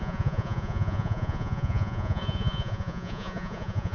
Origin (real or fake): fake